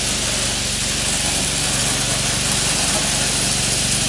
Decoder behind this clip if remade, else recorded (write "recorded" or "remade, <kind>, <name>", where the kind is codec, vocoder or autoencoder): recorded